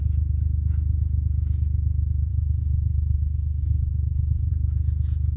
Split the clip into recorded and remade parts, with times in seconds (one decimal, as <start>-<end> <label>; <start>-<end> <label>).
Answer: 0.0-2.3 recorded; 2.3-4.5 remade; 4.5-5.4 recorded